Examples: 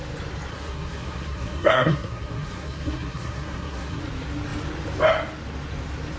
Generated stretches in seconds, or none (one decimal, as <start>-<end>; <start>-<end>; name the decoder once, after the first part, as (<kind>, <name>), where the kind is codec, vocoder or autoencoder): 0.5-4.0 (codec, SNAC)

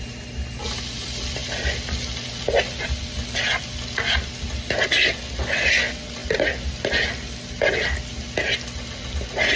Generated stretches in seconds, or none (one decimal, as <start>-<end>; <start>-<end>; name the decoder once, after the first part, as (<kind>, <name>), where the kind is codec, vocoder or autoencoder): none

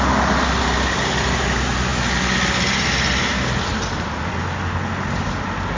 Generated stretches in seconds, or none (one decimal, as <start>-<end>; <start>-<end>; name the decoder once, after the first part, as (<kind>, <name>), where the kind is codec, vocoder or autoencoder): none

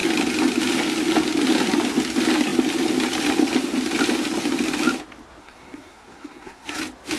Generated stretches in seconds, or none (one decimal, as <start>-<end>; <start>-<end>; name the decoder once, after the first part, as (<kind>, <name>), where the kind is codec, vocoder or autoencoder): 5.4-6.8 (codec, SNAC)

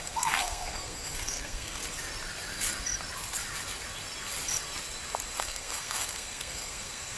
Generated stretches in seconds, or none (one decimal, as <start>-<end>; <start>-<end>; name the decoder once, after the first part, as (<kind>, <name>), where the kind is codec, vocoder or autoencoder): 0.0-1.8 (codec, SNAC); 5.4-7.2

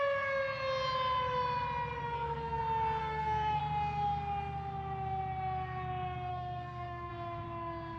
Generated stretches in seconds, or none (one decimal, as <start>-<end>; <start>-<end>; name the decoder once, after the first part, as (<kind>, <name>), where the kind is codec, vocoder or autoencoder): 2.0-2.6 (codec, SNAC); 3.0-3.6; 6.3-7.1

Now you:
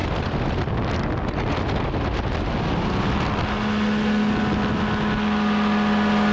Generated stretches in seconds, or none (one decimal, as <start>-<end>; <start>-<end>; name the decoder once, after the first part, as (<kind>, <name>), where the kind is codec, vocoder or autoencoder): none

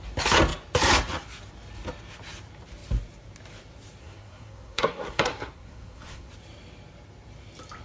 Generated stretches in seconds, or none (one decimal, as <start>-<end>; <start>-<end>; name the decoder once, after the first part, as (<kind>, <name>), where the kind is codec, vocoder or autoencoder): 4.0-6.3 (codec, SNAC)